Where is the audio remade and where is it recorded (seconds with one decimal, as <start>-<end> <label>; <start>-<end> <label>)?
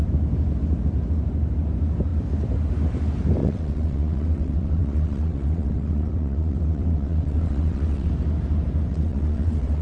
0.0-3.4 recorded; 3.4-8.1 remade; 8.1-8.9 recorded; 8.9-9.8 remade